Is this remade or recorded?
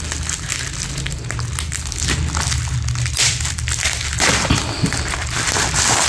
recorded